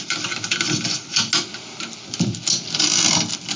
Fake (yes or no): no